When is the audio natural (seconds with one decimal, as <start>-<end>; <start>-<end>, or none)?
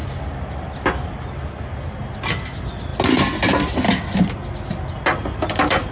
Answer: 0.0-5.9